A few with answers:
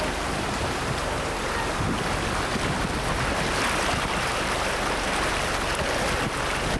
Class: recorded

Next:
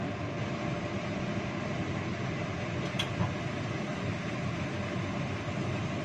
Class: recorded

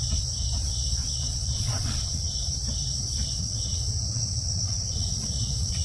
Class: remade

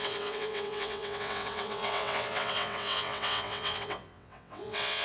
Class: remade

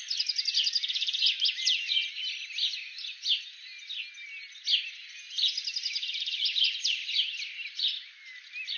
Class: recorded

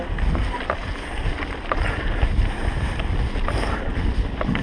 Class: recorded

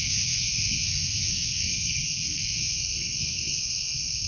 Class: remade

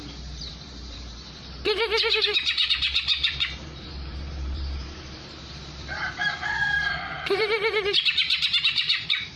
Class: remade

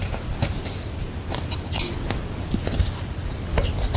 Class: recorded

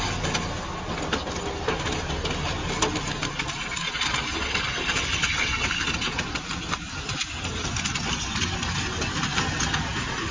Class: recorded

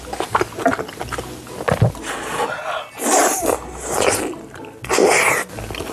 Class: recorded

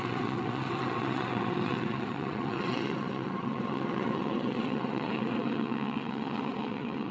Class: remade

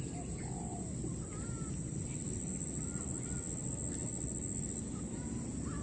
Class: recorded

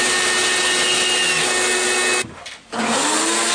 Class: recorded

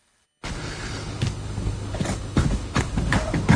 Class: remade